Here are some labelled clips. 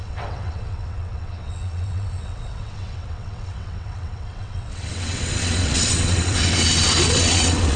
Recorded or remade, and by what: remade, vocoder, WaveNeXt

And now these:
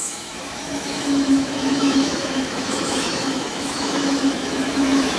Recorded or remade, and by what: remade, autoencoder, DAC-VAE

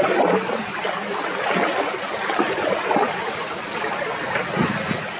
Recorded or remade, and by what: recorded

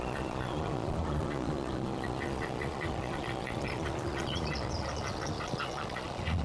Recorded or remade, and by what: remade, vocoder, Vocos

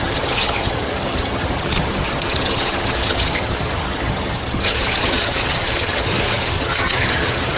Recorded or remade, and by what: remade, vocoder, HiFi-GAN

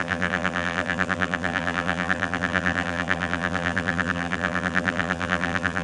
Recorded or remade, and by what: remade, vocoder, BigVGAN v2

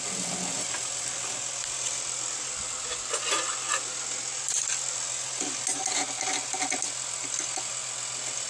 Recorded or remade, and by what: recorded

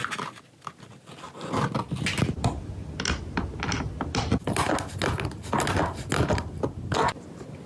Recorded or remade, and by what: recorded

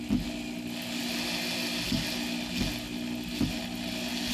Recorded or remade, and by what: recorded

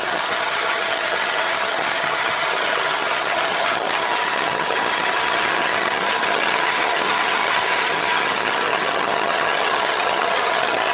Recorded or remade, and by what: remade, vocoder, HiFi-GAN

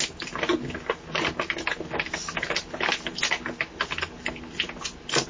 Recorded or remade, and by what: recorded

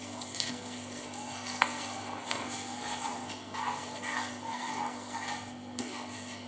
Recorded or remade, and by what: remade, codec, SNAC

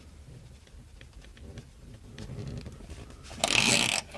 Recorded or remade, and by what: recorded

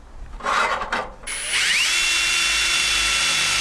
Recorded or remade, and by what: recorded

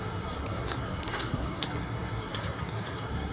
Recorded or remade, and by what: remade, codec, SNAC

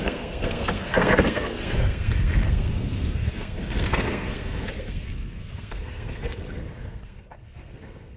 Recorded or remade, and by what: remade, codec, SNAC